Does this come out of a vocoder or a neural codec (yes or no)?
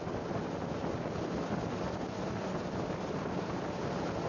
no